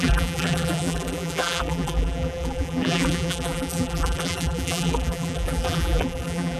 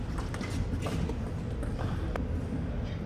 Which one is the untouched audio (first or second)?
second